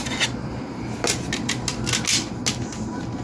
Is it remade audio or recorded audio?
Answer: recorded